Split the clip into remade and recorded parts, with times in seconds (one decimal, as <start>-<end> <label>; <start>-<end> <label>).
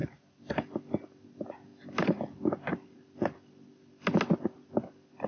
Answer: 0.0-5.3 recorded